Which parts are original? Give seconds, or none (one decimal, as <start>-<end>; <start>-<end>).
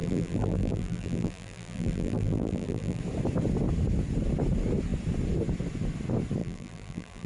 3.0-6.4